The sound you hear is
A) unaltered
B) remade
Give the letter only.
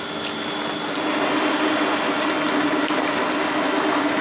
A